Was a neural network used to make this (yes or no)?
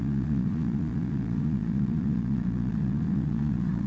yes